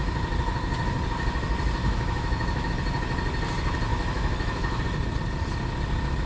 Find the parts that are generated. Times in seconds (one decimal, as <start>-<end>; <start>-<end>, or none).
1.8-2.7; 3.9-4.8